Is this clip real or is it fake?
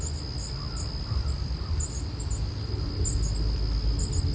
real